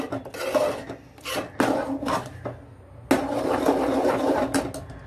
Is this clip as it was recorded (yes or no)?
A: yes